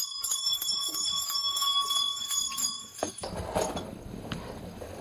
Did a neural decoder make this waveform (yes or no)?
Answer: yes